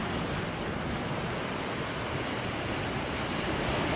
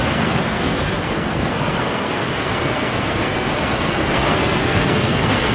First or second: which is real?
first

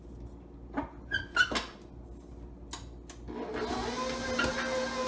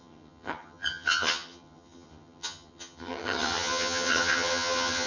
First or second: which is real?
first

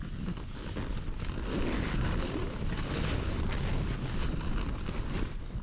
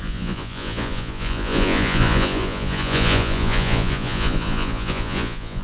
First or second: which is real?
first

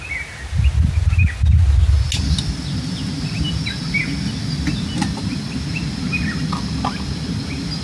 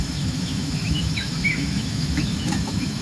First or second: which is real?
first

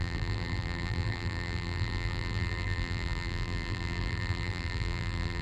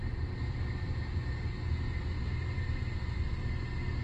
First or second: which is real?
second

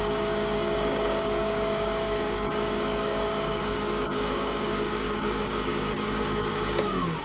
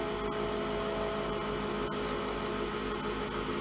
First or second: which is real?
second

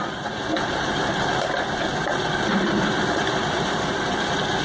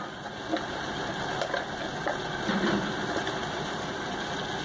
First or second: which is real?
second